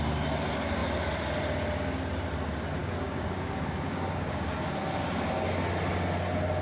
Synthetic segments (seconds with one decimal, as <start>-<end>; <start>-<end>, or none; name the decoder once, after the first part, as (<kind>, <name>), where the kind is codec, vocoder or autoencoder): 2.8-4.7 (codec, DAC)